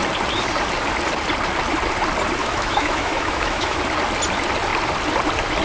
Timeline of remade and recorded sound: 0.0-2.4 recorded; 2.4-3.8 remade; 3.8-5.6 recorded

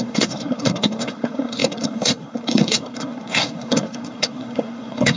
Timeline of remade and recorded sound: 0.0-5.2 remade

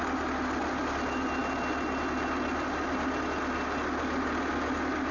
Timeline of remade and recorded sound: 0.0-5.1 recorded

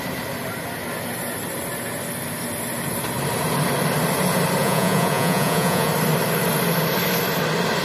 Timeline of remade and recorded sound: 0.0-4.6 recorded; 4.6-5.9 remade; 5.9-7.8 recorded